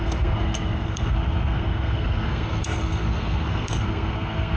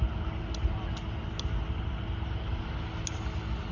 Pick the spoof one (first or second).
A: first